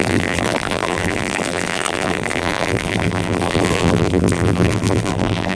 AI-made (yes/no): yes